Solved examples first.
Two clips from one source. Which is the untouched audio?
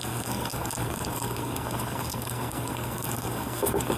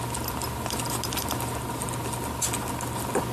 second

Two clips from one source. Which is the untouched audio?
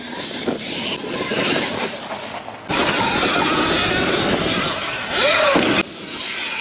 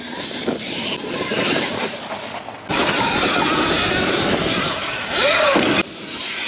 first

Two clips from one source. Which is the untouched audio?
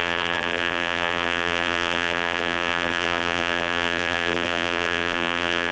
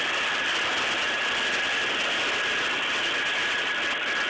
second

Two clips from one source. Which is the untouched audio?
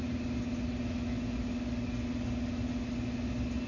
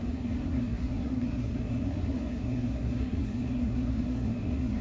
first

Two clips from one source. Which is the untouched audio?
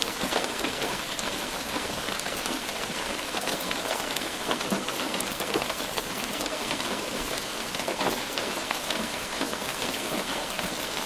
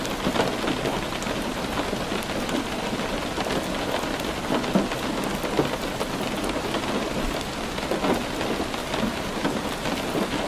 second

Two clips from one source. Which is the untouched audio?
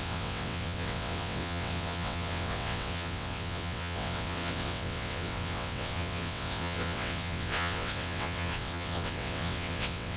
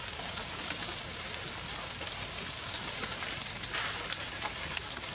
second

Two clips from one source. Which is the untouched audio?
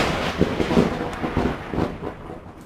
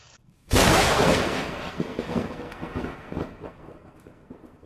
first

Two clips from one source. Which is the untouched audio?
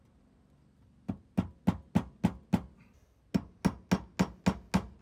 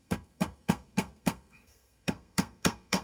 first